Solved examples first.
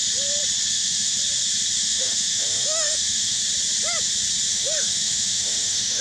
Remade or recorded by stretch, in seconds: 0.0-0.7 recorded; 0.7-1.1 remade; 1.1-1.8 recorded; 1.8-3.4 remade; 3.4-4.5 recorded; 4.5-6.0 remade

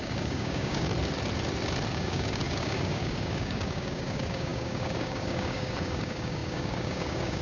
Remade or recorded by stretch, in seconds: 0.0-0.9 remade; 0.9-1.9 recorded; 1.9-7.4 remade